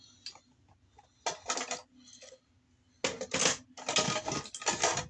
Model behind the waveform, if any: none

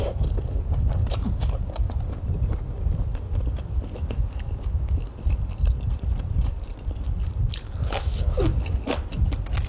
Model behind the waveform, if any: none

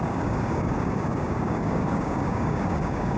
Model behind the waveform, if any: codec, DAC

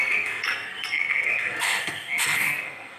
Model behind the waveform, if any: codec, SNAC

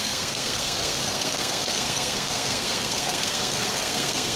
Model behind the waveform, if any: codec, SNAC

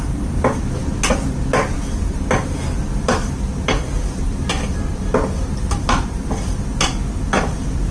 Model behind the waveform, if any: none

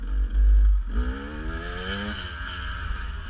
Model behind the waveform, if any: none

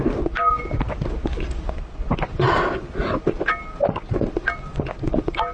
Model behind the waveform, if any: none